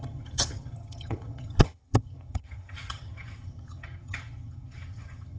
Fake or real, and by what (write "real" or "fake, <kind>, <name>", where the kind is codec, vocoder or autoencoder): fake, vocoder, HiFi-GAN